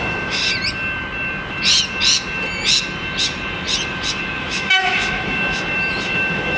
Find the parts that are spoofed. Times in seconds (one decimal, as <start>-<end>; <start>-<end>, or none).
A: 0.0-0.4; 4.4-6.6